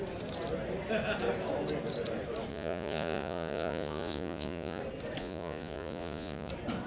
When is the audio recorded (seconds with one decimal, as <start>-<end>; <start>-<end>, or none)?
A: 0.0-2.5; 4.8-5.2; 6.5-6.9